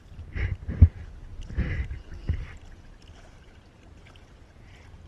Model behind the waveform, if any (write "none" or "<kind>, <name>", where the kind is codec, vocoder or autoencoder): none